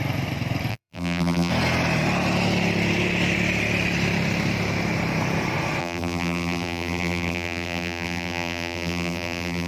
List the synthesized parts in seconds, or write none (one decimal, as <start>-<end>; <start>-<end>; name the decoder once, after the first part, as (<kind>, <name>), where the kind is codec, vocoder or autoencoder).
0.7-1.5 (vocoder, BigVGAN v2); 5.8-9.7

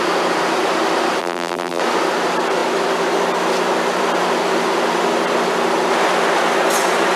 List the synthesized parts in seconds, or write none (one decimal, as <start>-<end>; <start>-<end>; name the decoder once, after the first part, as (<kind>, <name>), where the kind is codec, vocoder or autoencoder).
1.2-1.8 (vocoder, BigVGAN v2)

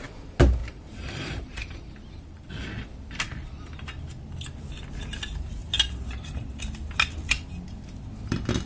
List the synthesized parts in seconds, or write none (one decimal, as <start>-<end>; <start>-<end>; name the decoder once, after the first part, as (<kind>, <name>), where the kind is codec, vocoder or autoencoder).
0.6-2.5 (vocoder, BigVGAN v2); 5.6-6.6